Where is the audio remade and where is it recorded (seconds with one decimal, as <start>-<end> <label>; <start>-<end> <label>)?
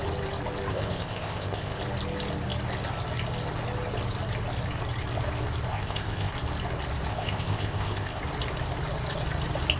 0.0-0.7 recorded; 0.7-1.8 remade; 1.8-5.7 recorded; 5.7-6.3 remade; 6.3-7.1 recorded; 7.1-8.2 remade; 8.2-9.8 recorded